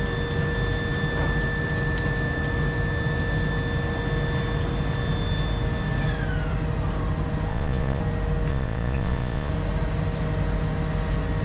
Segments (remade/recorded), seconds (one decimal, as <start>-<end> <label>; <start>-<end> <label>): 0.0-7.5 recorded; 7.5-8.0 remade; 8.0-8.5 recorded; 8.5-9.5 remade; 9.5-11.4 recorded